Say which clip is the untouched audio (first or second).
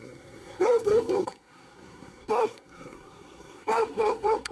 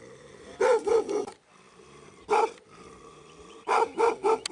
second